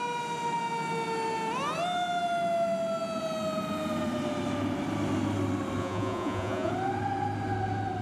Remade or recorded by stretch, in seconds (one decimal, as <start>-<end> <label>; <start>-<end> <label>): 0.0-5.8 recorded; 5.8-6.7 remade; 6.7-8.0 recorded